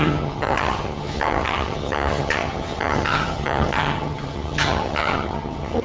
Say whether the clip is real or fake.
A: fake